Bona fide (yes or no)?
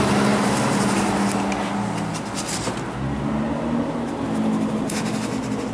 yes